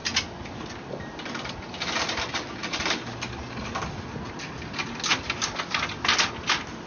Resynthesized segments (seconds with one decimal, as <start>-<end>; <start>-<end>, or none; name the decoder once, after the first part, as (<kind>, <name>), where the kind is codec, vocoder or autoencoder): none

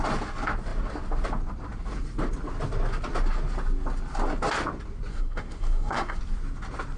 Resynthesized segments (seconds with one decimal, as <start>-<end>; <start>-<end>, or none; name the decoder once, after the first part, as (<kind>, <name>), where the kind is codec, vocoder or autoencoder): 5.1-6.2 (codec, SNAC)

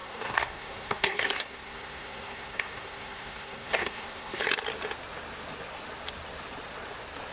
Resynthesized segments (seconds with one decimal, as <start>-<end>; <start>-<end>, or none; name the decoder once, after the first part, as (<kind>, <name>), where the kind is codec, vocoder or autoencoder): 0.0-4.4 (codec, SNAC)

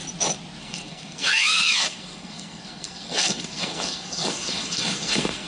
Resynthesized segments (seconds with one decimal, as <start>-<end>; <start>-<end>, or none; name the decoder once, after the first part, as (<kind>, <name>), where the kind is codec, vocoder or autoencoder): 0.6-5.5 (codec, SNAC)

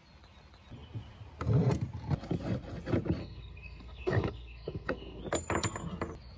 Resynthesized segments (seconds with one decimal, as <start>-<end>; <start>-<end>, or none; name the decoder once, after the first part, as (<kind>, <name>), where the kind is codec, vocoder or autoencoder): 3.2-5.2 (codec, SNAC)

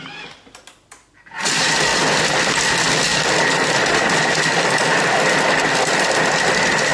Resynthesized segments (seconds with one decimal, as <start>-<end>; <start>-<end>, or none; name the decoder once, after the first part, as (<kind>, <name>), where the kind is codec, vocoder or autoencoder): none